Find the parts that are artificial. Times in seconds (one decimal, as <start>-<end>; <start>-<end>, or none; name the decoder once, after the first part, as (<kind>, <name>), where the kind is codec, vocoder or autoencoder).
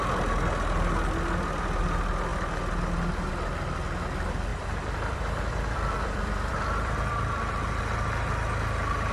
4.5-7.5 (vocoder, BigVGAN v2)